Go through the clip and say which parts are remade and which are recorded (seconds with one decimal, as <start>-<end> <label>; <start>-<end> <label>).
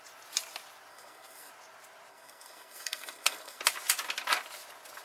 0.0-0.9 recorded; 0.9-1.5 remade; 1.5-2.1 recorded; 2.1-3.6 remade; 3.6-5.0 recorded